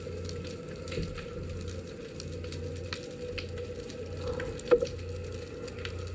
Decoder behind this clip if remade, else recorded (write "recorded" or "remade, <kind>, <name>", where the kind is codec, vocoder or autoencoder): recorded